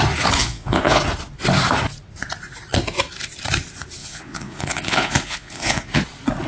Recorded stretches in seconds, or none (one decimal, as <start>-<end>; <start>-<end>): 0.0-0.4; 1.0-4.0; 6.0-6.5

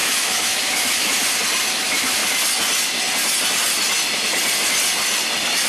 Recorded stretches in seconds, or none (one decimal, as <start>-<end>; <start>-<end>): 1.2-1.8; 2.2-5.7

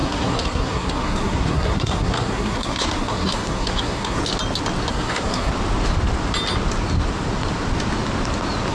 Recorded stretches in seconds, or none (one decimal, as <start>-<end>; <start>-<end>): 4.2-4.9; 5.5-8.7

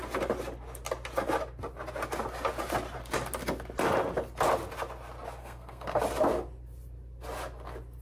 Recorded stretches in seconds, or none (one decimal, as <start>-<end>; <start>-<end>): 0.0-5.4; 6.0-8.0